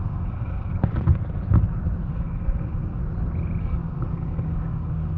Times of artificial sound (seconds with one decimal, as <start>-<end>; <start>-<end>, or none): 0.0-0.7; 2.0-3.0; 3.6-5.2